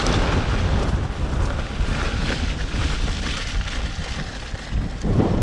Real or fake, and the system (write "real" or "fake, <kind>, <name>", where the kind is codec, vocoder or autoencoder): fake, vocoder, BigVGAN v2